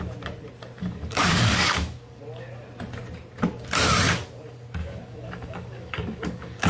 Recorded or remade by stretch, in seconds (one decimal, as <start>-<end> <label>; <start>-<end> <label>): 0.0-0.8 recorded; 0.8-2.2 remade; 2.2-4.8 recorded; 4.8-6.7 remade